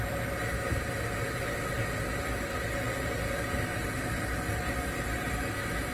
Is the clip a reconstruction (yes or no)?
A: no